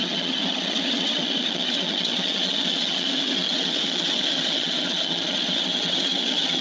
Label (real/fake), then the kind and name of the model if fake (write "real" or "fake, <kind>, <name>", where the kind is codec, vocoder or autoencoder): fake, vocoder, HiFi-GAN